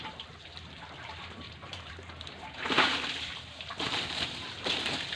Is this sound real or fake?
fake